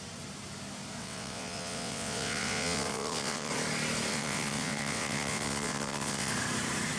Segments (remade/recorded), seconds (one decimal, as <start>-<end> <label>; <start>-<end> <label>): 0.0-1.0 recorded; 1.0-3.5 remade; 3.5-4.1 recorded; 4.1-6.3 remade; 6.3-7.0 recorded